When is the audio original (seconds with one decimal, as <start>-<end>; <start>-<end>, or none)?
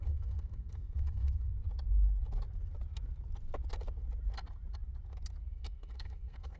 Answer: 1.5-5.5